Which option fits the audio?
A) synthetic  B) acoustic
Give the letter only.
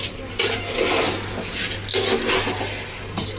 B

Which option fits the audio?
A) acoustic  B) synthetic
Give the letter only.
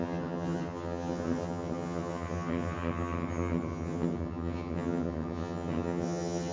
B